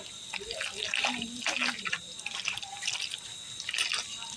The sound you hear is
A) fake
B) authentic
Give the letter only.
B